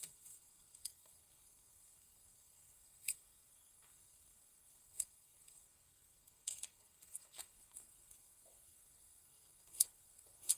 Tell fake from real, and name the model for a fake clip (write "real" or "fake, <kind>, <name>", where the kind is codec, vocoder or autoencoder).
fake, codec, SNAC